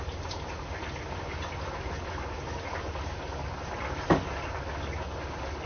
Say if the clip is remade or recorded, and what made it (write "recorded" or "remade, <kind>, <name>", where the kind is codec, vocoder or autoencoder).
recorded